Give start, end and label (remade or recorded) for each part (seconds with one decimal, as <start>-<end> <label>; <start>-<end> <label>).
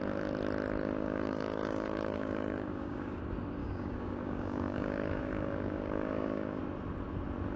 0.0-0.8 recorded; 0.8-3.2 remade; 3.2-3.6 recorded; 3.6-6.6 remade; 6.6-7.6 recorded